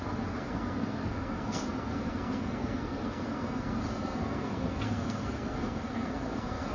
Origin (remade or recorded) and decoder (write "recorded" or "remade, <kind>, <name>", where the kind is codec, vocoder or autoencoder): remade, codec, SNAC